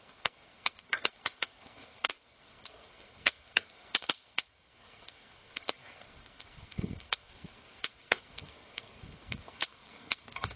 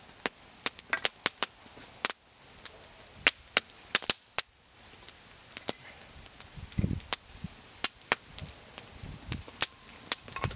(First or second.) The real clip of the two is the second